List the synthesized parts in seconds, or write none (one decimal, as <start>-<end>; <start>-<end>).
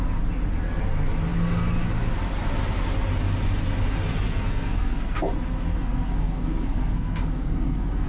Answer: 4.1-5.2; 5.7-8.1